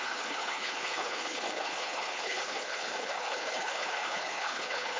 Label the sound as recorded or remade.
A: remade